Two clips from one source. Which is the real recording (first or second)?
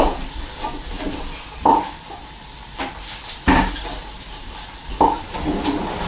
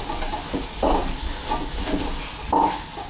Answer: second